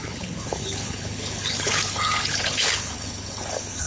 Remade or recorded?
remade